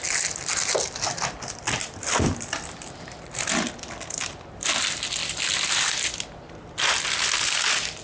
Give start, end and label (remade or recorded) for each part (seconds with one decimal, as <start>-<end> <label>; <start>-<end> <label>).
0.0-8.0 recorded